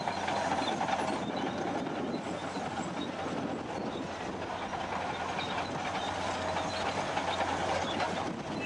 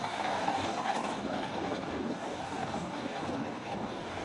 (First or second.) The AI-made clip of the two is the second